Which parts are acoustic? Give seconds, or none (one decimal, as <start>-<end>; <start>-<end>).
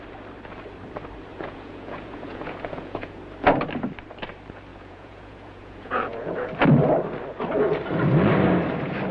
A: 0.0-1.3; 3.2-4.7; 6.5-9.1